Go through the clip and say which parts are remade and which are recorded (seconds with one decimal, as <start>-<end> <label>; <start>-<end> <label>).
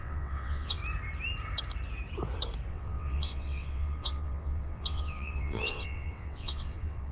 0.0-0.8 remade; 0.8-2.7 recorded; 2.7-7.1 remade